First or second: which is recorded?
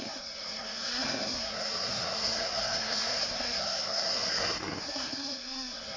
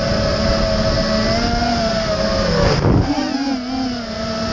second